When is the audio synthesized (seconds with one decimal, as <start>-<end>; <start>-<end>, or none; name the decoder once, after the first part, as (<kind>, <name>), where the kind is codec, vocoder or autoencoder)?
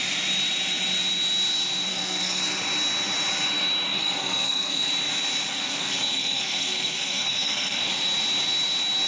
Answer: 1.9-2.4 (codec, SNAC); 3.9-4.9; 5.5-7.9